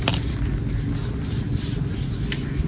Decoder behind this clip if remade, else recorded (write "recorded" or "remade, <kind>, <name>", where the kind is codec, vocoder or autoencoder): recorded